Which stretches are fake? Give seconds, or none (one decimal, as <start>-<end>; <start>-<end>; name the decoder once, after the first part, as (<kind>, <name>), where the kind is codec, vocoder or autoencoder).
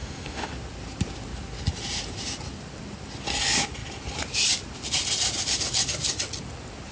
0.0-0.5 (autoencoder, DAC-VAE)